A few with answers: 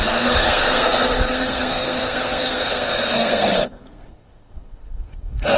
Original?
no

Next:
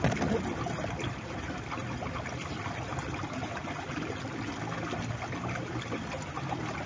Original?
yes